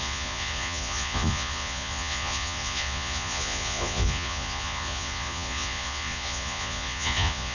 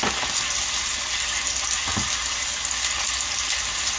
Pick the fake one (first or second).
first